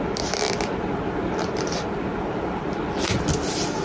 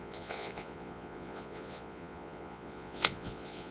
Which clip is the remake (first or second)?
second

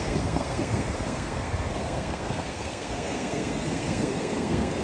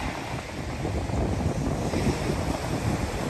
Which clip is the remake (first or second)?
first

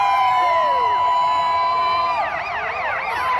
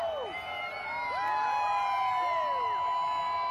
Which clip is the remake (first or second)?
first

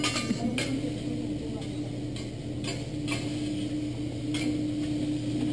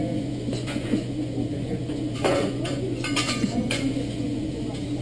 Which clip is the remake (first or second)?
second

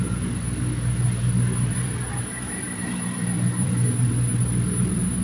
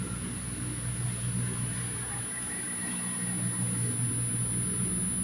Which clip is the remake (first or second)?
first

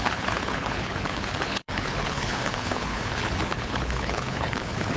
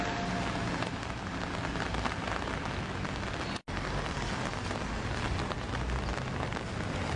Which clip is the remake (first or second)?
first